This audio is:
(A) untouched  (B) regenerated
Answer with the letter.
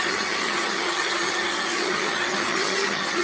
B